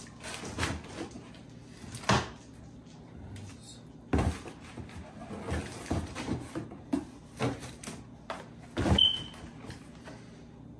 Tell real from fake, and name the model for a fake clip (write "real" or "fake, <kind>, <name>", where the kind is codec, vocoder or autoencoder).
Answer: real